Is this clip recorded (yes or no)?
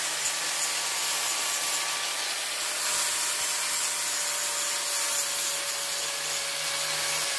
yes